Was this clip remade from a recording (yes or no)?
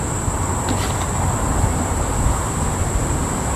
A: no